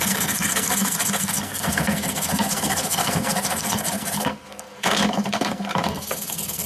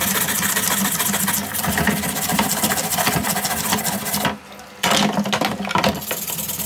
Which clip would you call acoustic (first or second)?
second